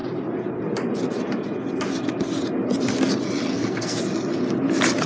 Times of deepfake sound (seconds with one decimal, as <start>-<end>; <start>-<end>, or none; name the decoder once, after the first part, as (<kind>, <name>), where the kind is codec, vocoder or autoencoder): 3.5-4.0 (codec, SNAC)